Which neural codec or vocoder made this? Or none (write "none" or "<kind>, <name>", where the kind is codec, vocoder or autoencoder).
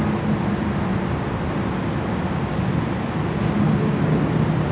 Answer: none